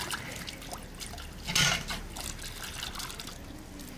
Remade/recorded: recorded